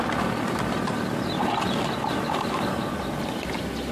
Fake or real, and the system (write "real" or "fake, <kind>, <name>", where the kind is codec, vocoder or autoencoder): real